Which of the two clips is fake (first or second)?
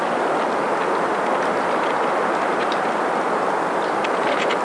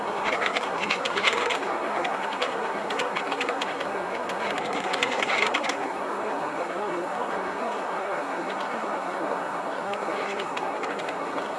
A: second